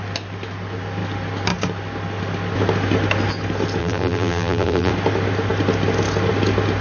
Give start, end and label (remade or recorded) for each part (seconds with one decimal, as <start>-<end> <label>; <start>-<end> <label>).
0.0-3.8 recorded; 3.8-4.9 remade; 4.9-6.8 recorded